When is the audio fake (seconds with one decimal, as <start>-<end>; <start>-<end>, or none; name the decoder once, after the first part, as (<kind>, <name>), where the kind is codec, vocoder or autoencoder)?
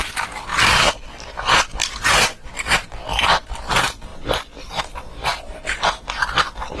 none